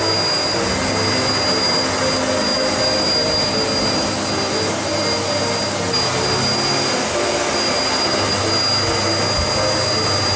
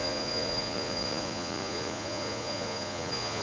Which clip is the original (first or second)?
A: first